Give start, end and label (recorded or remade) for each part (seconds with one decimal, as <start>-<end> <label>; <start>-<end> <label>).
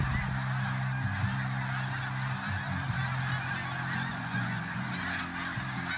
0.0-4.1 recorded; 4.1-5.2 remade; 5.2-6.0 recorded